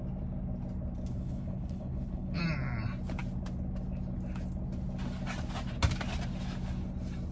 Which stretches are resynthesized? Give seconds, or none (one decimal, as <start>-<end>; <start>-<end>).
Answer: 1.1-2.4